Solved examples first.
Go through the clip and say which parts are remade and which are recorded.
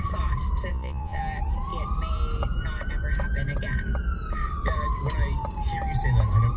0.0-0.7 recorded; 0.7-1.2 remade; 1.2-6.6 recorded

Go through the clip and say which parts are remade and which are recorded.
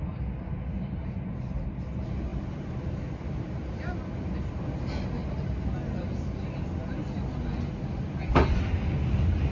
0.0-9.5 recorded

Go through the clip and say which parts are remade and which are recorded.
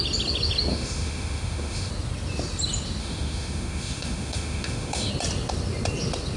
0.0-0.7 recorded; 0.7-1.9 remade; 1.9-3.0 recorded; 3.0-5.1 remade; 5.1-6.4 recorded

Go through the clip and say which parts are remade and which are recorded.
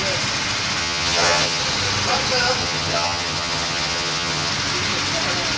0.0-0.8 recorded; 0.8-1.6 remade; 1.6-2.6 recorded; 2.6-4.5 remade; 4.5-5.6 recorded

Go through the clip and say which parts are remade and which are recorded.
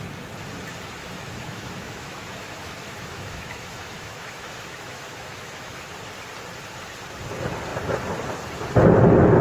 0.0-1.0 recorded; 1.0-5.9 remade; 5.9-9.4 recorded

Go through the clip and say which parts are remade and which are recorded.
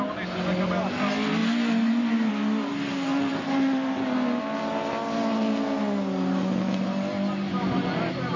0.0-8.4 recorded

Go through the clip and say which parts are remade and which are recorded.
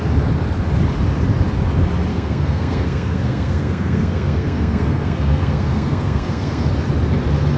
0.0-2.1 recorded; 2.1-6.7 remade; 6.7-7.6 recorded